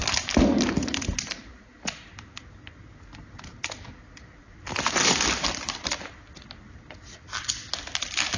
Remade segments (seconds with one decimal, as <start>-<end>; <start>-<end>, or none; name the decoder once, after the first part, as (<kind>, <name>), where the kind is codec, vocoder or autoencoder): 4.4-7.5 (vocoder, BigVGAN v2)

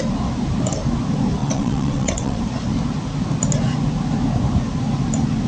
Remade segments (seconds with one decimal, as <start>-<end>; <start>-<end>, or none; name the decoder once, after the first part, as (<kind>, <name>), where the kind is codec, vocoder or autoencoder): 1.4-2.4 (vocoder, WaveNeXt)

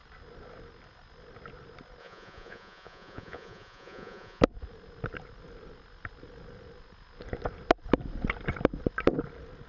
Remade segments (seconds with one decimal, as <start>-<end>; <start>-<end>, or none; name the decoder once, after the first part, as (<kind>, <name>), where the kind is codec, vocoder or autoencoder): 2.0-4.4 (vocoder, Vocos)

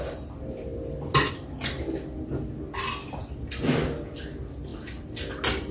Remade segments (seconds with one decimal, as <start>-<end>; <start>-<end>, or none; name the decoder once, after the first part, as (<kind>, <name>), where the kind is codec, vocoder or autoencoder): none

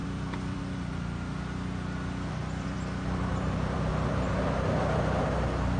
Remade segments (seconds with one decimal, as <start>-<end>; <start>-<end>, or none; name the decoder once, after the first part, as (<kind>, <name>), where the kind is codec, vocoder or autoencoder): 0.0-0.6 (vocoder, BigVGAN v2); 2.4-3.9

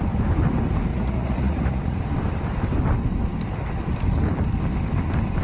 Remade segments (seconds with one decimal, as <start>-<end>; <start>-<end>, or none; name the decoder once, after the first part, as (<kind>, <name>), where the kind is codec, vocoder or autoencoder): 0.9-2.0 (vocoder, Vocos)

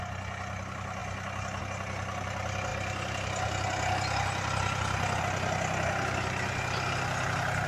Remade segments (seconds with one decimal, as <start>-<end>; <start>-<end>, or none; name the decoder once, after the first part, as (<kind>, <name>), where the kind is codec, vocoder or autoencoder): none